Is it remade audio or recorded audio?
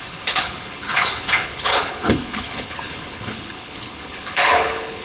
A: remade